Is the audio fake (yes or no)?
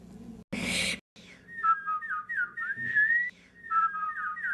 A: no